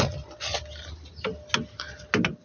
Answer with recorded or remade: recorded